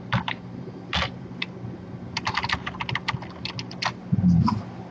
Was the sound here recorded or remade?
recorded